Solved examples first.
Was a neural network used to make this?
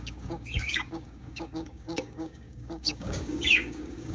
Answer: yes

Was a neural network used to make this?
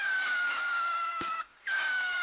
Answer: yes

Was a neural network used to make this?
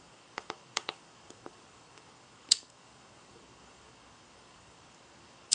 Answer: yes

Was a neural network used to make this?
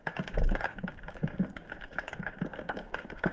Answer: yes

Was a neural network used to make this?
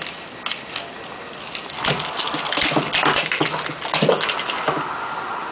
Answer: no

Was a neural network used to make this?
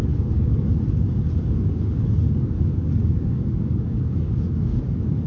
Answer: yes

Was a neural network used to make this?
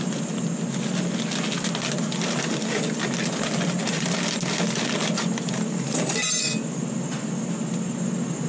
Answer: no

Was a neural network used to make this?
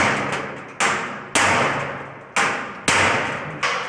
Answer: no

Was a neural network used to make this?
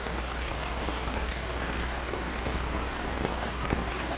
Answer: yes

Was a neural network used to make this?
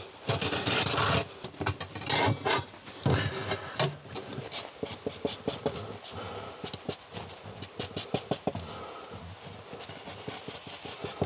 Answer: no